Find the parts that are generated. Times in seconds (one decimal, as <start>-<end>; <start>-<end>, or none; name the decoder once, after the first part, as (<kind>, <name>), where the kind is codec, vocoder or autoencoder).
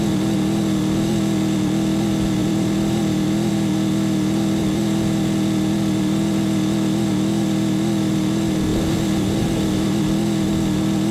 2.4-3.5 (vocoder, BigVGAN v2)